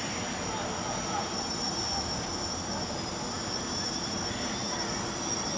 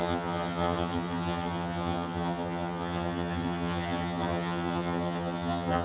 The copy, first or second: second